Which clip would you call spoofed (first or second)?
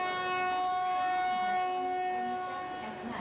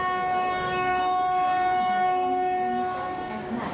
second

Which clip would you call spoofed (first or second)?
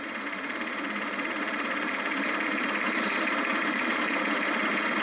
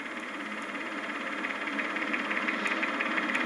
first